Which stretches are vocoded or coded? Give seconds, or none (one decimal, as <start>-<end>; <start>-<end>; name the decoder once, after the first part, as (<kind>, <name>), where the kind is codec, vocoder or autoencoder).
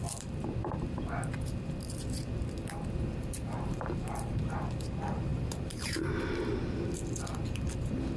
3.1-4.4 (vocoder, BigVGAN v2); 5.3-6.1